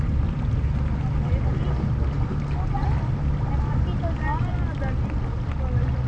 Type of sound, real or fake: real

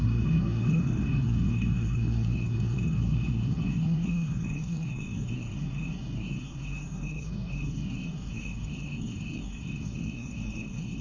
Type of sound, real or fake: fake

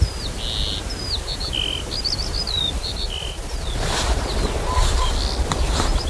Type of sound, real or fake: real